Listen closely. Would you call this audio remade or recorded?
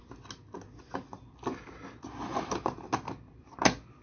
recorded